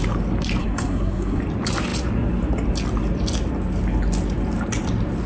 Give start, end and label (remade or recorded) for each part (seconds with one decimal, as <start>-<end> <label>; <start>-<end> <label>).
0.0-0.6 recorded; 0.6-1.4 remade; 1.4-5.3 recorded